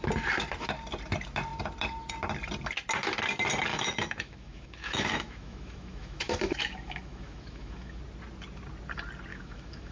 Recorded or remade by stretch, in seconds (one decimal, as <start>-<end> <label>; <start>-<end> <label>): 0.0-3.7 recorded; 3.7-8.0 remade; 8.0-9.3 recorded; 9.3-9.9 remade